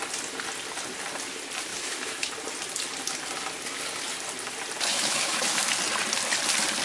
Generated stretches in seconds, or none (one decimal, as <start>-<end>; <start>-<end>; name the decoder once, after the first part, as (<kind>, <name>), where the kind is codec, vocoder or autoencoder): 1.7-2.3 (autoencoder, DAC-VAE); 4.9-5.6